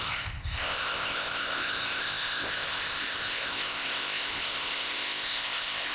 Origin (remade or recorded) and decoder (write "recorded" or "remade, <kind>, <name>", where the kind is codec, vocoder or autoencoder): remade, codec, ZipCodec